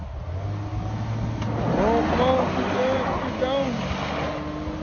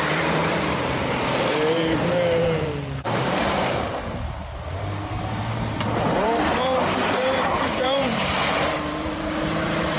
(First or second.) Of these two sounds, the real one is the first